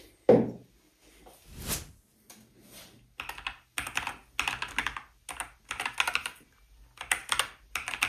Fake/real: real